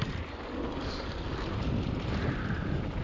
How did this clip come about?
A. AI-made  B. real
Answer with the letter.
B